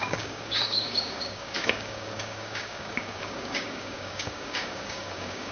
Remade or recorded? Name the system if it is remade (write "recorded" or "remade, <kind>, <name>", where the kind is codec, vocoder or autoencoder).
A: remade, codec, DAC